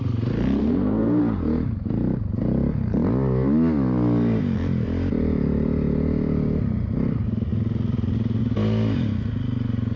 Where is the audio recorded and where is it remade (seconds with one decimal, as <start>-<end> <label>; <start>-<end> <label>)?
0.0-0.6 recorded; 0.6-1.2 remade; 1.2-10.0 recorded